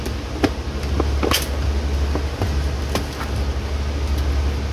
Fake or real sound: real